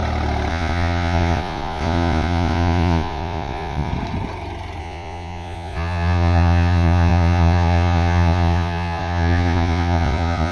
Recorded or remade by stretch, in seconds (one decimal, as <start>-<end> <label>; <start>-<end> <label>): 0.0-0.5 recorded; 0.5-3.9 remade; 3.9-4.8 recorded; 4.8-10.5 remade